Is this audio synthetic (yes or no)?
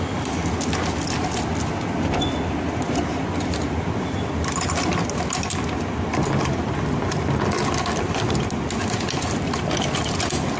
no